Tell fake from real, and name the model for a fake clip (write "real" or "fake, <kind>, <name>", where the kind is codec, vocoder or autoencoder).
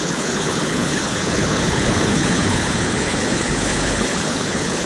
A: fake, codec, HILCodec